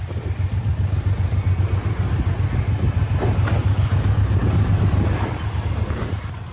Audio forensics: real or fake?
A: real